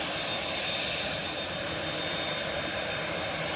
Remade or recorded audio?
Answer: recorded